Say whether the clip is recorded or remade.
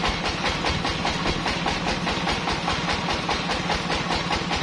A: recorded